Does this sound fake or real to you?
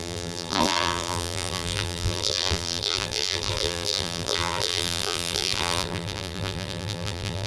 fake